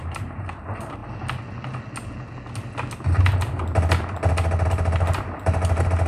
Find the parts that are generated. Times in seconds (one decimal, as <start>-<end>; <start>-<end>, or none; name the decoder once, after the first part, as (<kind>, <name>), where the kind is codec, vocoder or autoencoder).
0.0-1.0 (vocoder, BigVGAN v2); 4.7-6.1